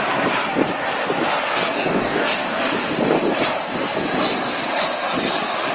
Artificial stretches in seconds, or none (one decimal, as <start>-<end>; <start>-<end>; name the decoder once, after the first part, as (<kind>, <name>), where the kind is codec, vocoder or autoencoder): 1.5-2.6 (codec, DAC)

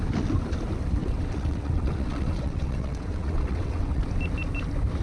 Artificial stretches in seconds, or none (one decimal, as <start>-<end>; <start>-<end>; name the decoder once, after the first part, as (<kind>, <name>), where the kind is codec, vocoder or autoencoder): 1.0-4.0 (vocoder, WaveNeXt)

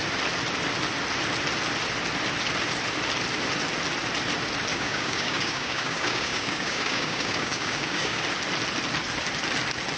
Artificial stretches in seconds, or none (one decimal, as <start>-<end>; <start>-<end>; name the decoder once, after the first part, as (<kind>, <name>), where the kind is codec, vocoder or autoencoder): 4.7-8.2 (codec, DAC)

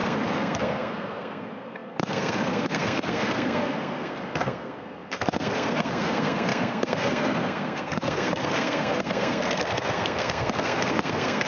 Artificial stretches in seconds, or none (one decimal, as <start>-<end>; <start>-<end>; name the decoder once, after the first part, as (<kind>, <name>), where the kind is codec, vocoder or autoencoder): 0.0-11.5 (codec, SNAC)

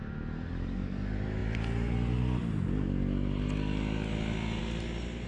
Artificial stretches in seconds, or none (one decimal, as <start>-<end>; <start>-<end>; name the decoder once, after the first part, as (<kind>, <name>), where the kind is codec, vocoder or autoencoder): none

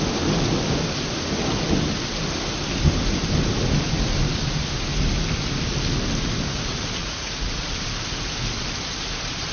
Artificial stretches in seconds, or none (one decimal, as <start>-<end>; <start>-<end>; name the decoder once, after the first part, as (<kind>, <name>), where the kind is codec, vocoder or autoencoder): 7.0-7.6 (vocoder, Vocos)